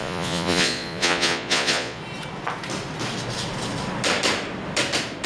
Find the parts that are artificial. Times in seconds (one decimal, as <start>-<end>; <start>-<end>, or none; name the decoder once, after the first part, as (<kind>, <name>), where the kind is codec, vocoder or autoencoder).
0.0-2.0 (vocoder, Vocos)